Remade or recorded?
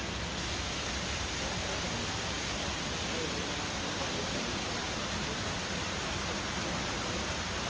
recorded